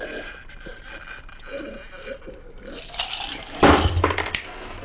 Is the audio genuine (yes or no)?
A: no